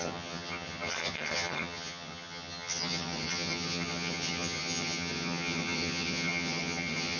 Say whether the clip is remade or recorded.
remade